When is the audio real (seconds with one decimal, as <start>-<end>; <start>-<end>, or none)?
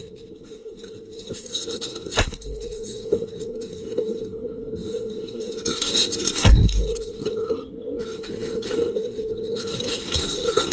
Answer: none